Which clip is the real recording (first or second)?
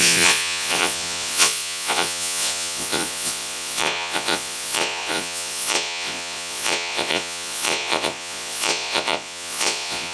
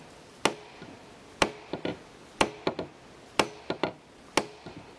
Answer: second